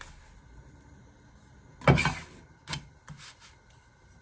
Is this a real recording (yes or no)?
yes